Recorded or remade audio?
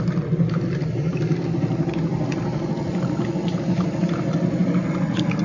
recorded